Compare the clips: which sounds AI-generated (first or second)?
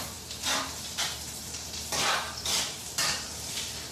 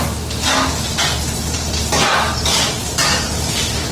first